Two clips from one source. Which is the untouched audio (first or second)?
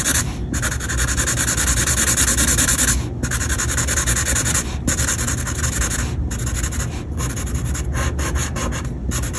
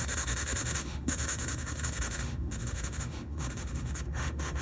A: first